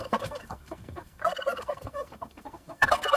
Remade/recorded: remade